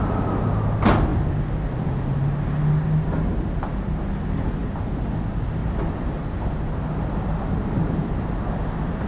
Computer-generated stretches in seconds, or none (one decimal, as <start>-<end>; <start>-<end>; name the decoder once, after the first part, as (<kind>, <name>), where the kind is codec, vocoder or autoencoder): 5.6-6.6 (vocoder, BigVGAN v2)